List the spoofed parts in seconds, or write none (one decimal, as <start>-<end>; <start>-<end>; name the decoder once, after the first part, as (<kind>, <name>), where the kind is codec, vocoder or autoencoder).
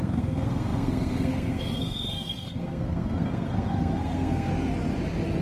0.0-4.5 (codec, SNAC)